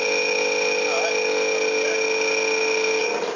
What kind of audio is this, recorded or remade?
recorded